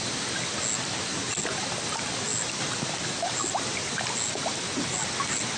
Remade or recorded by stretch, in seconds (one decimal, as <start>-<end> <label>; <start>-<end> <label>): 0.0-5.6 recorded